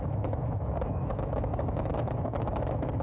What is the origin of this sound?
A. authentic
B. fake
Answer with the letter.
B